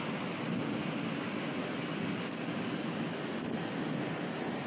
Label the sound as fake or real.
real